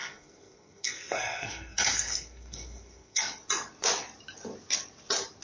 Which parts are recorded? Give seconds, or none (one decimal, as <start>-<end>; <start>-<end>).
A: 3.2-5.4